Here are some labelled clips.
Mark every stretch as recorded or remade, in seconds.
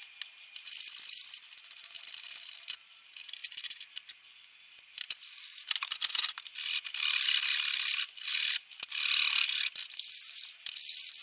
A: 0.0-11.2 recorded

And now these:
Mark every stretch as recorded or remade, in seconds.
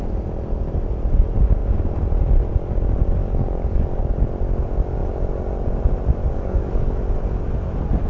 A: 0.0-3.2 recorded; 3.2-4.0 remade; 4.0-6.2 recorded; 6.2-6.9 remade; 6.9-8.1 recorded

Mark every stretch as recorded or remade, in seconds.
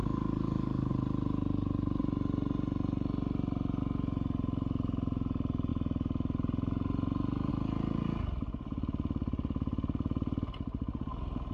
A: 0.0-0.9 remade; 0.9-11.5 recorded